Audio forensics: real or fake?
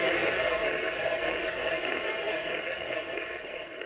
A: fake